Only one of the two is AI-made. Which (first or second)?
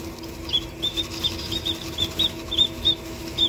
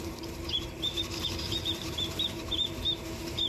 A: second